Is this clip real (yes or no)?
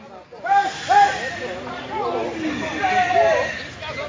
yes